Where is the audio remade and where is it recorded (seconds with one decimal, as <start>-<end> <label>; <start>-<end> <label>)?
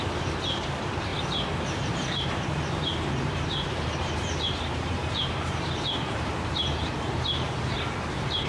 0.0-1.1 remade; 1.1-1.6 recorded; 1.6-8.5 remade